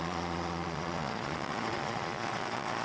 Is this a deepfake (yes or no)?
yes